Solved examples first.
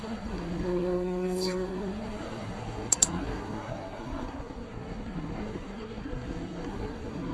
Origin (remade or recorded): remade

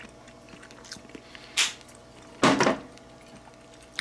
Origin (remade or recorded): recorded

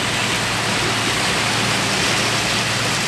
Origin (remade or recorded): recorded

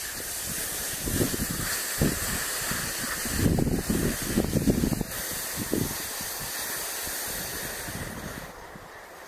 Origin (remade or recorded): recorded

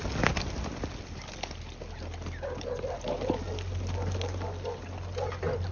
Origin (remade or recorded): recorded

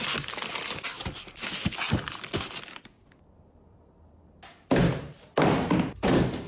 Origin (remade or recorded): recorded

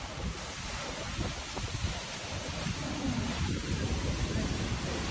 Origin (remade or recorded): recorded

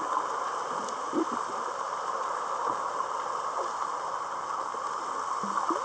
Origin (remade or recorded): recorded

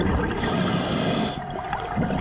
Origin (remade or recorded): recorded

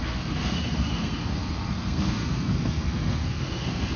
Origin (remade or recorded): remade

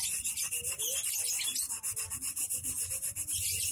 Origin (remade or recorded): recorded